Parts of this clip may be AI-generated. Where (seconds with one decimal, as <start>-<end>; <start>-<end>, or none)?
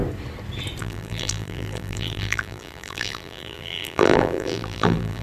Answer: 0.8-5.2